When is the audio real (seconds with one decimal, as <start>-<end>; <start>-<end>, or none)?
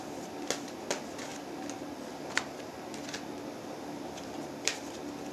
0.0-5.3